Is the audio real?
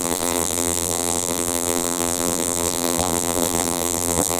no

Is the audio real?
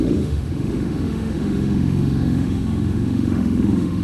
no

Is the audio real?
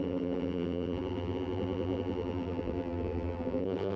no